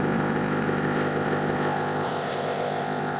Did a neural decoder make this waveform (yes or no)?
yes